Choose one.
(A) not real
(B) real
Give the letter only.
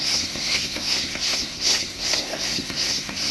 A